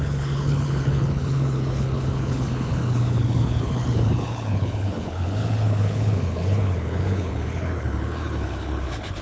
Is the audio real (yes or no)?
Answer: no